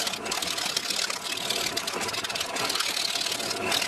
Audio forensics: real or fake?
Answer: real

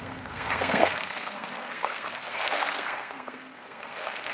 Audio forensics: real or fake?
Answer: fake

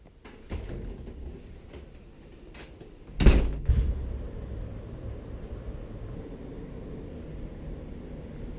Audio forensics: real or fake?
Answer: real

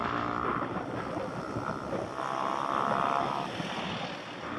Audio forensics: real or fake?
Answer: real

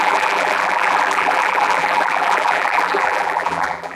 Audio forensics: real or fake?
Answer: fake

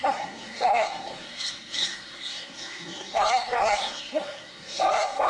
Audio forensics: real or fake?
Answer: fake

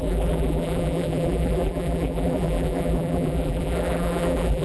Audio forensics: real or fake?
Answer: fake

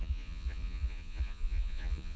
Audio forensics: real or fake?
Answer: fake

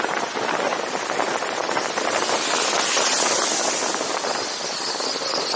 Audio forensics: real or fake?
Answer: real